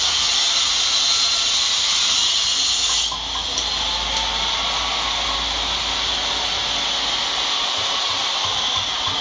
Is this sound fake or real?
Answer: real